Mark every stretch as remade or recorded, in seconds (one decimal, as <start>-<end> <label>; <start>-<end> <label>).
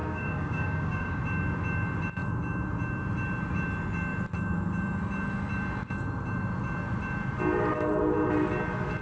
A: 0.0-1.2 remade; 1.2-9.0 recorded